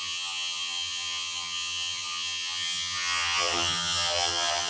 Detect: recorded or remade remade